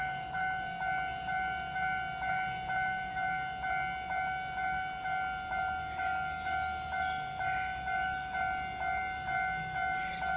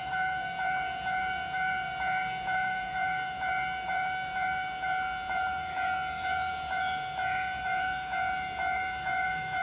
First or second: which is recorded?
first